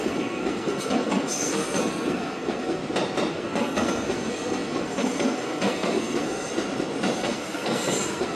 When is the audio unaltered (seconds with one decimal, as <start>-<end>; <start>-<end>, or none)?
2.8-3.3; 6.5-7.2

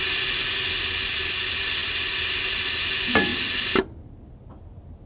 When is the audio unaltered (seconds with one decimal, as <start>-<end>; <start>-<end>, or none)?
0.0-5.1

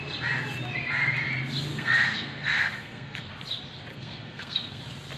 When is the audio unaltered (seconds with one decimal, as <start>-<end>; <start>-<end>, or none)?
0.0-1.7; 3.3-3.9; 4.8-5.2